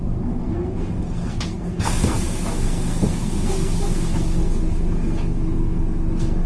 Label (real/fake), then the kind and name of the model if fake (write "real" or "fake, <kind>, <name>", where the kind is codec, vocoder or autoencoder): fake, codec, SNAC